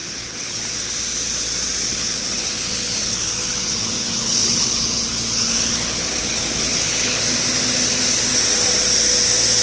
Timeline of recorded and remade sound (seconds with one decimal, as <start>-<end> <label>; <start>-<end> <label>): 0.0-0.6 remade; 0.6-1.9 recorded; 1.9-7.2 remade; 7.2-9.6 recorded